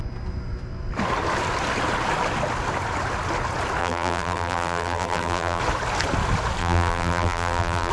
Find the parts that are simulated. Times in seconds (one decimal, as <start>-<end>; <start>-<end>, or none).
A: 3.8-5.6; 6.6-7.9